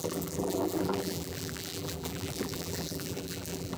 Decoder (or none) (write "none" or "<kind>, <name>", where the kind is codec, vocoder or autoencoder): vocoder, BigVGAN v2